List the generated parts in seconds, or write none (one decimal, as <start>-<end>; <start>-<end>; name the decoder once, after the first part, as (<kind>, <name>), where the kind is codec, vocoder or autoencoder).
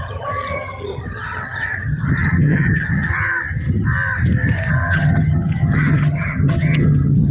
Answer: 0.0-3.1 (vocoder, HiFi-GAN); 4.7-7.3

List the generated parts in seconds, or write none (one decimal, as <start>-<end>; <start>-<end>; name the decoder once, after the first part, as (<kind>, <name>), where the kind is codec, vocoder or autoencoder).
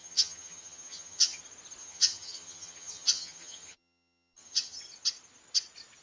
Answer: 0.0-1.4 (vocoder, HiFi-GAN); 1.8-4.8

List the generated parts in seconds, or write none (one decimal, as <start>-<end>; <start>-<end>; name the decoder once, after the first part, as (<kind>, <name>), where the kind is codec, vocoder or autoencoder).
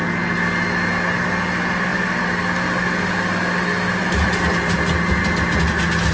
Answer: none